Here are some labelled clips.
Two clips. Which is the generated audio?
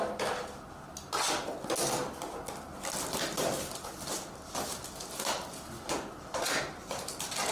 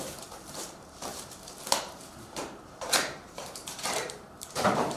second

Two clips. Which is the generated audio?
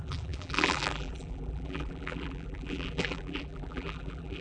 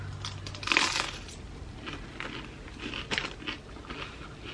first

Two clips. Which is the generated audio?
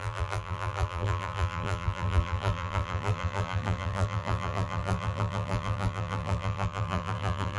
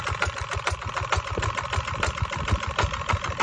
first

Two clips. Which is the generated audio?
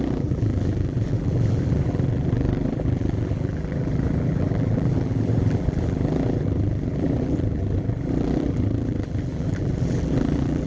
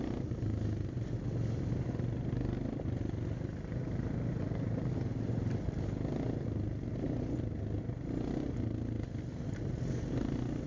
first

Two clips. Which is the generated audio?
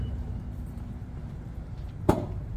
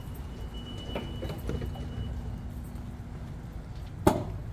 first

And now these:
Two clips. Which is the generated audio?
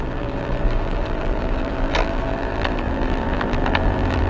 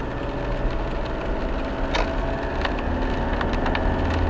first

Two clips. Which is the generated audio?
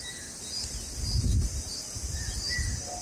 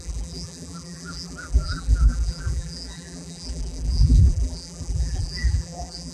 second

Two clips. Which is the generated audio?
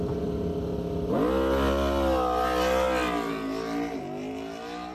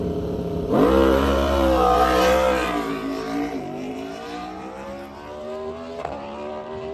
second